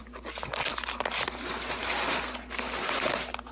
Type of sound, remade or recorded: recorded